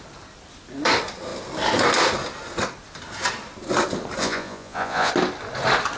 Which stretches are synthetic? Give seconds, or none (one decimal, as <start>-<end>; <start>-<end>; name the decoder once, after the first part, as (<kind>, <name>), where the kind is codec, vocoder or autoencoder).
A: 4.2-5.1 (vocoder, Vocos)